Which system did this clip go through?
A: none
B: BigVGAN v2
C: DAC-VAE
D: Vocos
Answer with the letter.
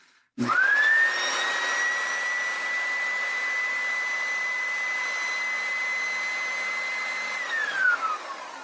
A